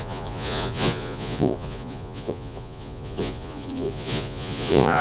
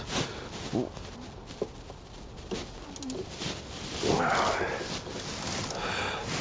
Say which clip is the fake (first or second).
first